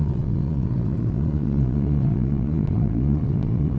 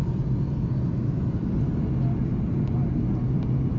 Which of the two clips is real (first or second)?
second